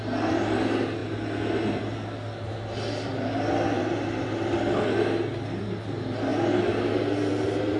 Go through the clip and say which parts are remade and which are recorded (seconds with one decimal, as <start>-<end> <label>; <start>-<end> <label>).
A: 0.0-7.8 recorded